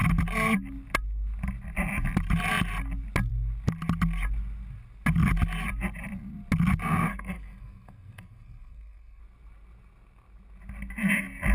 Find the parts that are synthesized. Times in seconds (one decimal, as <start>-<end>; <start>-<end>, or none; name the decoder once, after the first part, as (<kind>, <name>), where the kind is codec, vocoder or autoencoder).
7.1-9.2 (codec, SNAC)